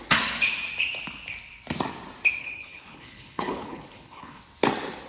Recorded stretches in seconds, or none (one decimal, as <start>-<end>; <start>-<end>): 0.0-2.4; 4.4-5.1